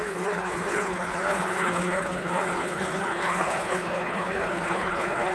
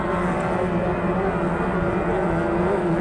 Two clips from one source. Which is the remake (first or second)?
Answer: first